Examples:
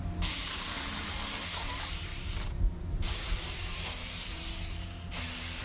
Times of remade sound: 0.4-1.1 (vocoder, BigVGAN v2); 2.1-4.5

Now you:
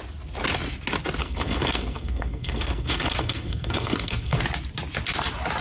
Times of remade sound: 1.2-4.4 (codec, SNAC)

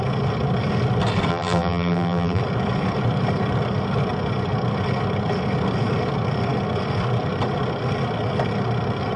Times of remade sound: 1.3-2.4 (vocoder, BigVGAN v2)

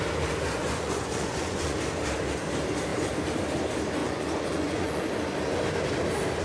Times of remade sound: 0.6-1.8 (vocoder, Vocos); 4.0-5.0